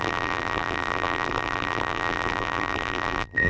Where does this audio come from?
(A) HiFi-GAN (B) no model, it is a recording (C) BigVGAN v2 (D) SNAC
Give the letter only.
C